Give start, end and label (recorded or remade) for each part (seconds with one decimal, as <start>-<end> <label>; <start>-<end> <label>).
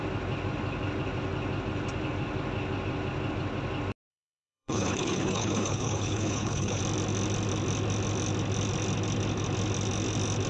0.0-4.1 recorded; 4.1-6.8 remade; 6.8-10.5 recorded